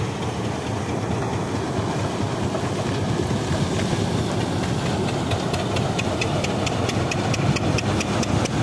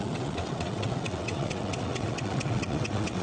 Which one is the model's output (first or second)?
second